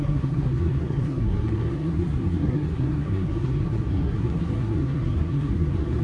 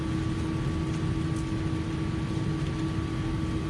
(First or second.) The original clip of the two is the second